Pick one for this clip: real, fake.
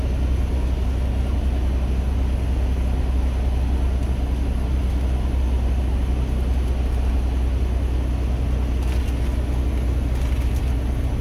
real